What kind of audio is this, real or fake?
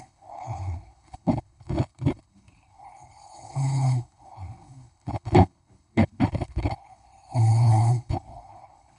fake